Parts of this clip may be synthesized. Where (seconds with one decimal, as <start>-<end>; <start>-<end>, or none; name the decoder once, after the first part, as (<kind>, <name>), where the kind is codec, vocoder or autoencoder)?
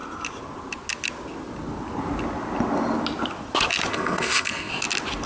3.9-4.7 (codec, SNAC)